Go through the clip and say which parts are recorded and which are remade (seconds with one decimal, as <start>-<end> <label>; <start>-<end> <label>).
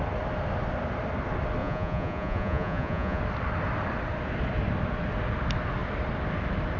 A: 0.0-1.6 recorded; 1.6-3.2 remade; 3.2-6.8 recorded